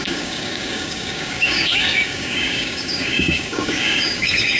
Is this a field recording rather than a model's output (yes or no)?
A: no